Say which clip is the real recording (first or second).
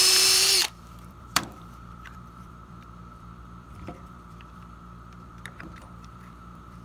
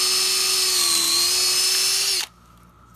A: second